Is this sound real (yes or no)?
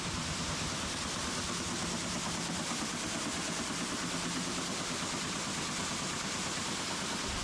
yes